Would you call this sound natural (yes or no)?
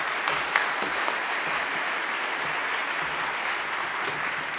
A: yes